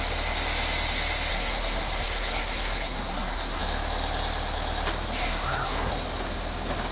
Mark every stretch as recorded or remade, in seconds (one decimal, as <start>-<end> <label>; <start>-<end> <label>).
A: 0.0-1.3 recorded; 1.3-3.6 remade; 3.6-5.2 recorded; 5.2-5.9 remade; 5.9-6.9 recorded